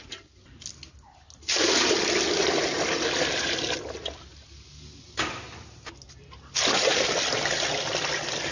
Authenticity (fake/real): real